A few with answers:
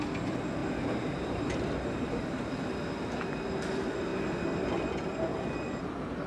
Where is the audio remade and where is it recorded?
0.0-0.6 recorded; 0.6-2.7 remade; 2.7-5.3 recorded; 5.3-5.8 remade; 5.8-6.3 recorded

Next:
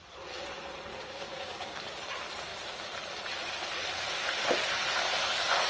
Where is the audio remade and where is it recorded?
0.0-0.9 recorded; 0.9-1.8 remade; 1.8-5.7 recorded